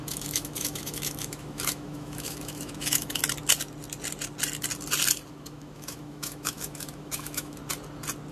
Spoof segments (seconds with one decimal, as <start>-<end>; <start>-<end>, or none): 0.0-3.2; 5.3-7.6